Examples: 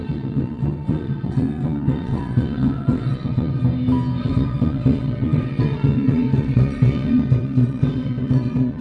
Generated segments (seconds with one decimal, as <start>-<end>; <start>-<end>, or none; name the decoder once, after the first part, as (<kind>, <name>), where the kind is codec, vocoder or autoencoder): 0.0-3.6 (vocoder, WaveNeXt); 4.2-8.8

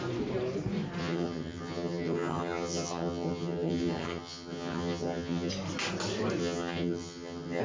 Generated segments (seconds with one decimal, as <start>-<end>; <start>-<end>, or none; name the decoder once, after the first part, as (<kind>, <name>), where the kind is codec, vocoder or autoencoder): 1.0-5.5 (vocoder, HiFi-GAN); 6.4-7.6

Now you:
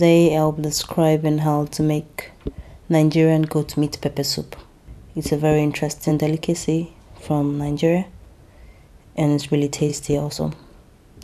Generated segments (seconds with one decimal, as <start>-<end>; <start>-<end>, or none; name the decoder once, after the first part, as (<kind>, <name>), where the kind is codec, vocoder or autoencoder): 2.1-2.8 (vocoder, BigVGAN v2); 9.9-10.4

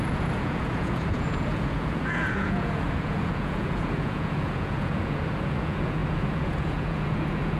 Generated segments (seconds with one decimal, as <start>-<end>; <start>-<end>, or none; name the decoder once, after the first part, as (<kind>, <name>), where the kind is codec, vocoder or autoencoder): 0.0-7.6 (vocoder, Vocos)

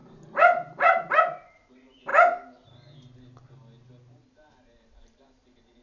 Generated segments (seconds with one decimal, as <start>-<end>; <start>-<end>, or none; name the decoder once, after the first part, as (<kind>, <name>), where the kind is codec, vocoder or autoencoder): none

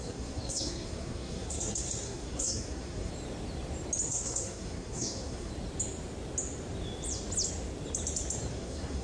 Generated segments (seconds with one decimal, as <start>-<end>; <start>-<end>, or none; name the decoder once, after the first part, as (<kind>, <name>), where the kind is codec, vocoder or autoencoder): 0.0-3.1 (codec, SNAC); 4.1-5.5; 8.5-9.0

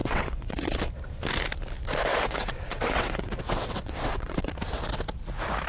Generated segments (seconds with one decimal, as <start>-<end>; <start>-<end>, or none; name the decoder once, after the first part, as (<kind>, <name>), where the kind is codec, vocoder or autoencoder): 0.0-0.8 (vocoder, WaveNeXt); 2.1-4.5